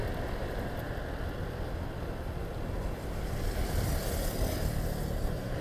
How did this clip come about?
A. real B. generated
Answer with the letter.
A